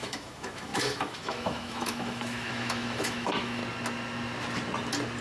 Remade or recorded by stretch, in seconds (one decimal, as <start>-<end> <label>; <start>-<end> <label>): 0.0-3.6 remade; 3.6-5.2 recorded